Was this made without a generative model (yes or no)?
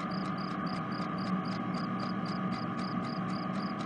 yes